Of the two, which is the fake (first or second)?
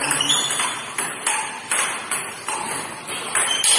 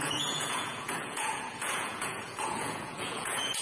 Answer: second